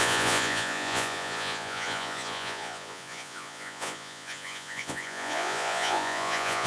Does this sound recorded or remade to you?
remade